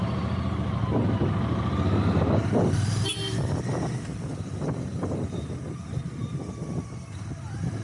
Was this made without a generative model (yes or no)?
yes